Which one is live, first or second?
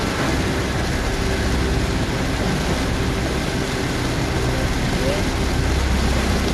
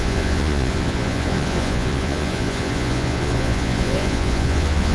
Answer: first